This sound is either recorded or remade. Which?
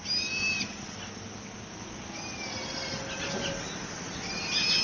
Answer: recorded